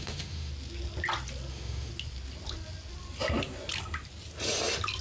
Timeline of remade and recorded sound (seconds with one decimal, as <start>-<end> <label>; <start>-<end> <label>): 0.0-0.5 remade; 0.5-1.5 recorded; 1.5-1.9 remade; 1.9-5.0 recorded